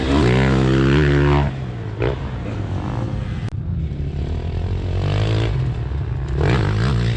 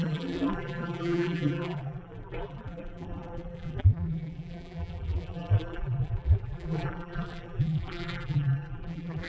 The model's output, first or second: second